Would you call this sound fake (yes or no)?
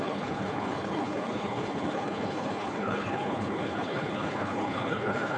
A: yes